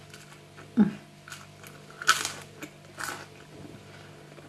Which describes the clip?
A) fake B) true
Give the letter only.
B